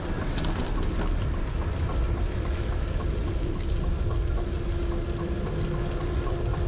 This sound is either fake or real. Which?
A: real